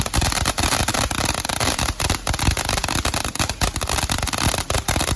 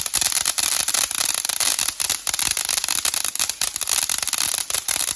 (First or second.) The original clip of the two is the second